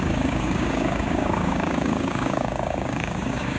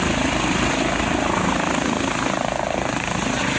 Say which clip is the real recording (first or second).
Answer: second